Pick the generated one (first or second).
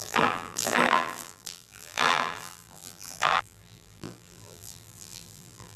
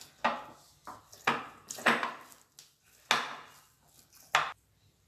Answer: first